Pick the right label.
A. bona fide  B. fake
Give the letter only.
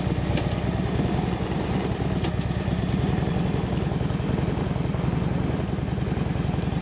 A